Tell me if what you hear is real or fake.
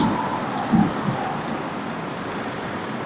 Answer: real